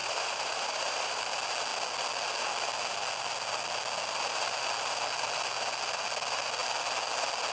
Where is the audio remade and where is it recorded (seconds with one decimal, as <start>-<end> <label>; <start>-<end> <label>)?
0.0-1.2 remade; 1.2-7.5 recorded